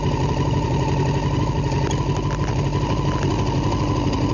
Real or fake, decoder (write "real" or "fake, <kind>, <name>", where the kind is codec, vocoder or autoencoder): real